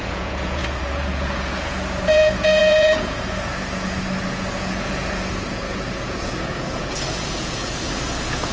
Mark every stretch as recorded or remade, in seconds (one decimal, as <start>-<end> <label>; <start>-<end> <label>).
0.0-8.5 remade